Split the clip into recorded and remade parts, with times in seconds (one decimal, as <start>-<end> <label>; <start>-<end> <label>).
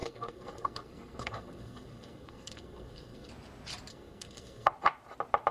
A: 0.0-3.3 remade; 3.3-3.9 recorded; 3.9-4.7 remade; 4.7-5.5 recorded